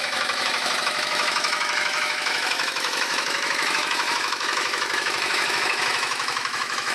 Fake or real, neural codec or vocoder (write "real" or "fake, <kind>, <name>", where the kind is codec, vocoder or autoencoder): fake, autoencoder, DAC-VAE